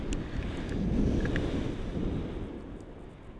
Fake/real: real